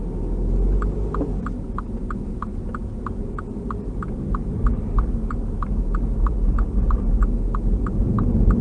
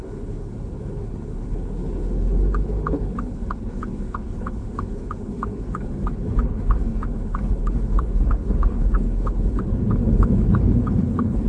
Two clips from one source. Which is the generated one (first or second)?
second